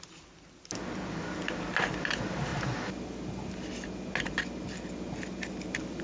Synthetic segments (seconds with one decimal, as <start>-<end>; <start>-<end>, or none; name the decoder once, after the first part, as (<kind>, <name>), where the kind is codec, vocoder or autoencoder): none